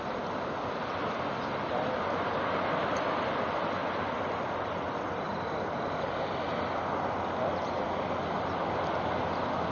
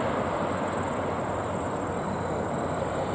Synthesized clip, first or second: first